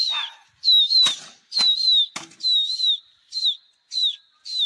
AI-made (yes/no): no